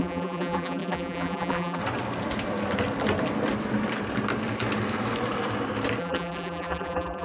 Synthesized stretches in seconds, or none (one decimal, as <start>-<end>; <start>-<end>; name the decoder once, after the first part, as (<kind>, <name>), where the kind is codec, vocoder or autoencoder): 0.0-1.8 (vocoder, BigVGAN v2); 6.0-7.2